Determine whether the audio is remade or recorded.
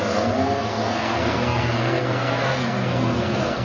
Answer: remade